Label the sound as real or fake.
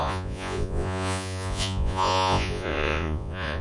fake